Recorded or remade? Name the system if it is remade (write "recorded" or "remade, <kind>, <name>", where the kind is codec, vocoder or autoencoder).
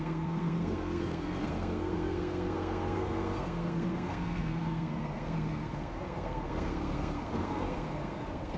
remade, codec, SNAC